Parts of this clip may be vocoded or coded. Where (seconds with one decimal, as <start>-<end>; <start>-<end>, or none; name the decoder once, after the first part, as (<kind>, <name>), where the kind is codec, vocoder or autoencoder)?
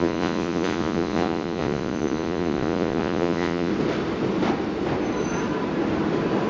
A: 0.0-3.7 (vocoder, Vocos)